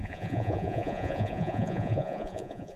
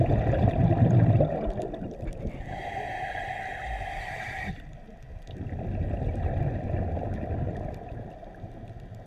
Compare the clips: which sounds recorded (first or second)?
second